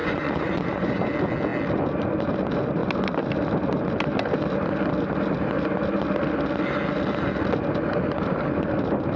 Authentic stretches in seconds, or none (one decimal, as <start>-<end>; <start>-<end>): 1.1-9.2